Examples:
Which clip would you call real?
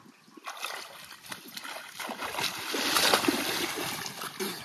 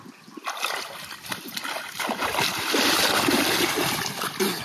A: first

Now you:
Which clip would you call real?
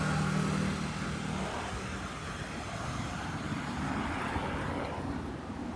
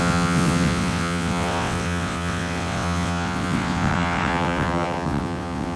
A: first